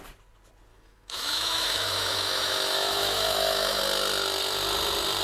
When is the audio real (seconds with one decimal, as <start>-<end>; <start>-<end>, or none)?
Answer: 0.0-0.7; 3.8-5.2